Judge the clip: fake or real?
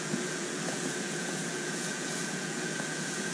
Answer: fake